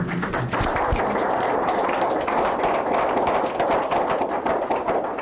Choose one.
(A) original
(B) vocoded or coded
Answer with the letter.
A